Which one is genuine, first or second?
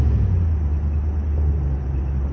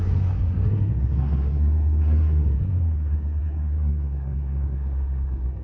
first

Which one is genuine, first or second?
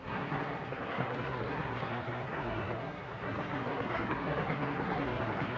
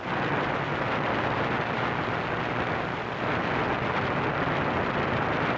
second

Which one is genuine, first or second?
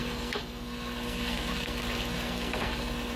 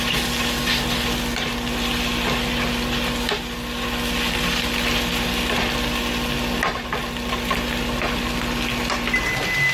second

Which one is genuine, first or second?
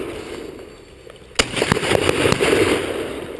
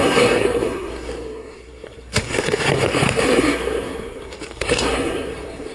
first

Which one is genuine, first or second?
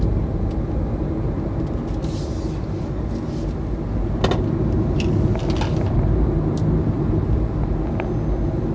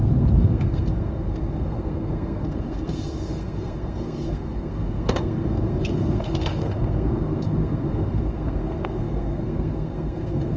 first